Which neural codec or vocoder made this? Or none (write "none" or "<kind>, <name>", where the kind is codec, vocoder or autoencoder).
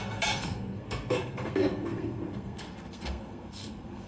codec, SNAC